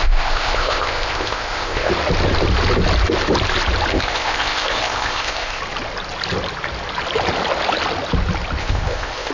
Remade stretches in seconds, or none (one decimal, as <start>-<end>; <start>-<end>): 0.0-1.9; 3.9-5.6; 8.6-9.3

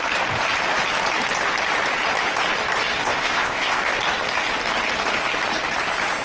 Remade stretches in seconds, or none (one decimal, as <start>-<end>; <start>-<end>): 3.0-3.8

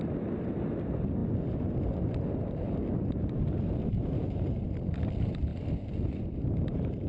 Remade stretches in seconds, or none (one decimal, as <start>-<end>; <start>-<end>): none

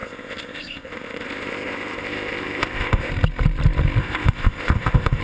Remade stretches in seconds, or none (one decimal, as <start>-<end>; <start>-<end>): 0.0-3.1; 4.0-5.2

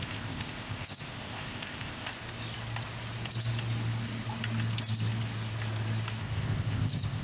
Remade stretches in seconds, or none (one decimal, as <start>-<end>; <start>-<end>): 0.0-2.1; 6.2-7.2

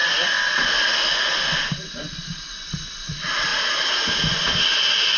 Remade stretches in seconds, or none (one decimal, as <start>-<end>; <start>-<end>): none